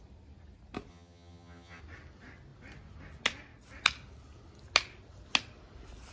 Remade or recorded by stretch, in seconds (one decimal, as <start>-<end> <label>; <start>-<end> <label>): 0.0-0.9 recorded; 0.9-1.8 remade; 1.8-6.1 recorded